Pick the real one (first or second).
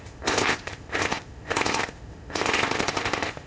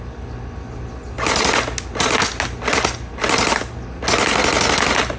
second